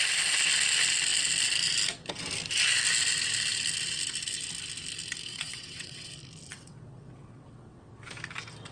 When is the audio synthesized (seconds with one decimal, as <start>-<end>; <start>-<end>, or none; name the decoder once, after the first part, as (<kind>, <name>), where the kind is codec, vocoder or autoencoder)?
5.3-6.1 (vocoder, WaveNeXt); 6.5-7.9